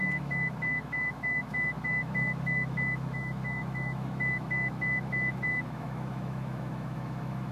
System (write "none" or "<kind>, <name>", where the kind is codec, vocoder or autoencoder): autoencoder, DAC-VAE